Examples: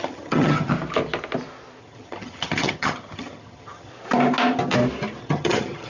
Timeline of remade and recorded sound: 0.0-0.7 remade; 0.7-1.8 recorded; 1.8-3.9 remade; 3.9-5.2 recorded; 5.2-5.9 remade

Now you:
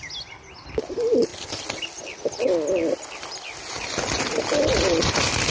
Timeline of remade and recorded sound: 0.0-5.5 recorded

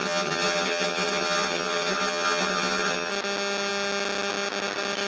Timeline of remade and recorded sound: 0.0-3.1 remade; 3.1-5.1 recorded

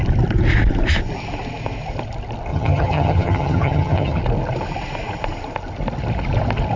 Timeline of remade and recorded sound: 0.0-2.5 recorded; 2.5-4.2 remade; 4.2-6.8 recorded

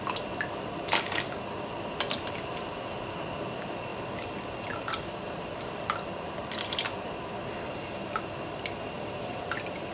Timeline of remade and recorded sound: 0.0-9.9 recorded

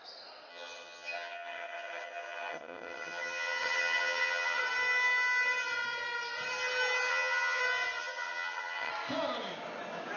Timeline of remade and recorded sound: 0.0-0.5 recorded; 0.5-4.6 remade; 4.6-7.1 recorded; 7.1-7.6 remade; 7.6-8.0 recorded; 8.0-8.9 remade; 8.9-10.2 recorded